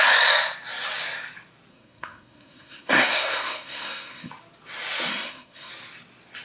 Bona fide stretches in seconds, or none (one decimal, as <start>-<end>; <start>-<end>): 0.0-1.7; 4.3-5.1; 5.7-6.4